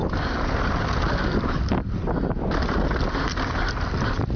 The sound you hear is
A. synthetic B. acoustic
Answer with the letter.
B